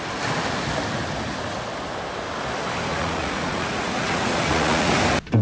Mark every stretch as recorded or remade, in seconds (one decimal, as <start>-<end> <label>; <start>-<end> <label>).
0.0-2.9 recorded; 2.9-4.9 remade; 4.9-5.4 recorded